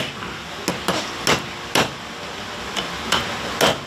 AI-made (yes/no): no